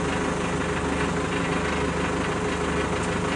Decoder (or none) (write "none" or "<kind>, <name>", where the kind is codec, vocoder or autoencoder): none